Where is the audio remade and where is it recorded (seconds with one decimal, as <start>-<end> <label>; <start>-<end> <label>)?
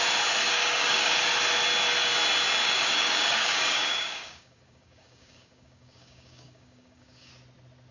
0.0-0.4 recorded; 0.4-1.2 remade; 1.2-2.6 recorded; 2.6-7.3 remade; 7.3-7.9 recorded